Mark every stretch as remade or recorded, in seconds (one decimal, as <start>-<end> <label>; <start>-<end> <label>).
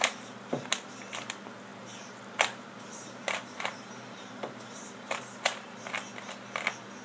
0.0-1.7 recorded; 1.7-5.9 remade; 5.9-7.0 recorded